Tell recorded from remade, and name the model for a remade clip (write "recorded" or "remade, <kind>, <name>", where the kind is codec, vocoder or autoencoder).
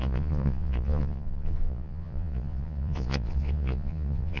remade, vocoder, Vocos